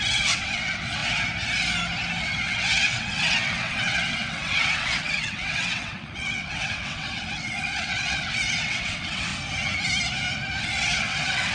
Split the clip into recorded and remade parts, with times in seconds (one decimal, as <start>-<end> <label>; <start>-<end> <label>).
0.0-1.0 remade; 1.0-2.2 recorded; 2.2-9.3 remade; 9.3-10.6 recorded; 10.6-11.5 remade